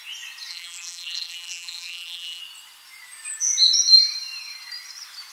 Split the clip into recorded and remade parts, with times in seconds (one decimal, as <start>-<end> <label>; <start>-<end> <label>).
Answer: 0.0-0.5 recorded; 0.5-2.4 remade; 2.4-5.3 recorded